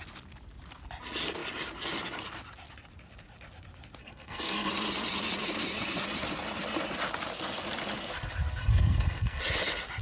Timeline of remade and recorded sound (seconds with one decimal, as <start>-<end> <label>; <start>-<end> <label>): 0.0-4.0 recorded; 4.0-4.7 remade; 4.7-8.6 recorded; 8.6-9.4 remade; 9.4-10.0 recorded